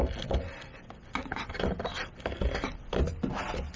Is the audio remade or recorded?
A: recorded